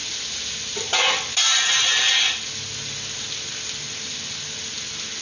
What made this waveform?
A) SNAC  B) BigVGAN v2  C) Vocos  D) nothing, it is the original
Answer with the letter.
D